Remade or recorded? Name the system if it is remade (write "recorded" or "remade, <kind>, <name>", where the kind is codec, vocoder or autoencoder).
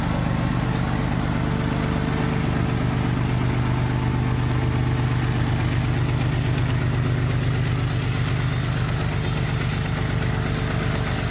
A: recorded